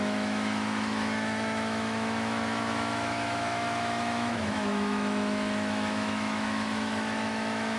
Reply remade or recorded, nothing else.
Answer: remade